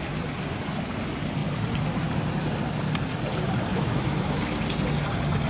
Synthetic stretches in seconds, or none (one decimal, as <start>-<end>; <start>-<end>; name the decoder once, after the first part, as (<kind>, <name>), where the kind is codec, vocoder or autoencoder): 3.7-4.4 (autoencoder, DAC-VAE)